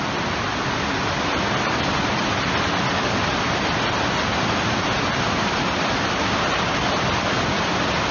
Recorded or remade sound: recorded